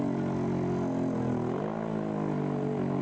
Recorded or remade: recorded